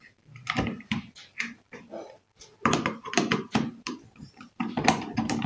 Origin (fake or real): fake